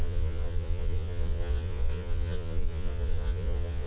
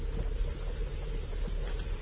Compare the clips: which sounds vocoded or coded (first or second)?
first